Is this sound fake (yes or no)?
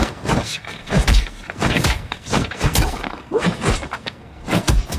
yes